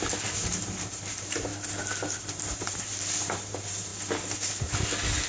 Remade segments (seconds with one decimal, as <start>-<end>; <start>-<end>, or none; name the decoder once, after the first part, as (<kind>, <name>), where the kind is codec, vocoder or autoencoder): 0.0-1.5 (vocoder, BigVGAN v2); 2.1-3.9